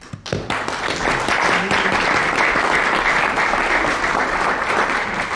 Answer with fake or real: real